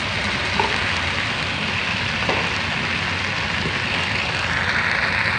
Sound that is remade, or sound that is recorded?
recorded